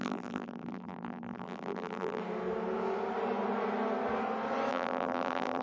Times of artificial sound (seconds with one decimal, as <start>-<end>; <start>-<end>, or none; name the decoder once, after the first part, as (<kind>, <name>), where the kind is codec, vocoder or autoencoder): 0.0-2.2 (vocoder, BigVGAN v2); 4.7-5.6